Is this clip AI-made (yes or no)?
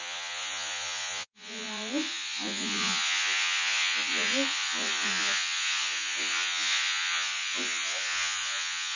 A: yes